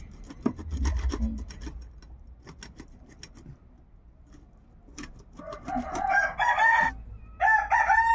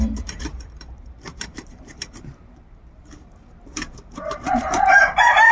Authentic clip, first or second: first